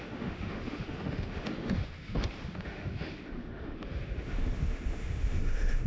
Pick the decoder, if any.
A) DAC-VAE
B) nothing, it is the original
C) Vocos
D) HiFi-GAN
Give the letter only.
A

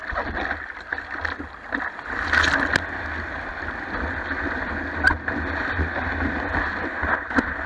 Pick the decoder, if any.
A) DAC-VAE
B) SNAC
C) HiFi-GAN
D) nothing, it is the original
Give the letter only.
D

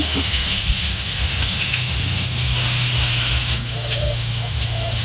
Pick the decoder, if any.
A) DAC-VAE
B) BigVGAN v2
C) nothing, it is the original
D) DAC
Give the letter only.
A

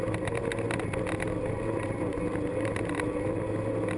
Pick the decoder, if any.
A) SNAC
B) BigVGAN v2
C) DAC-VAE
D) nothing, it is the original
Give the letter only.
D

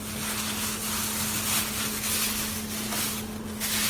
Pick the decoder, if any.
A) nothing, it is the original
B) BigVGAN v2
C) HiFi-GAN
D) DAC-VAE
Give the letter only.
A